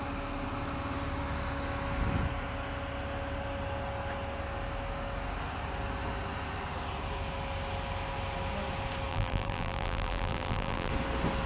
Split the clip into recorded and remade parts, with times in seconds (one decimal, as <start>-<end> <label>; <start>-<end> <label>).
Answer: 0.0-9.1 recorded; 9.1-10.9 remade; 10.9-11.5 recorded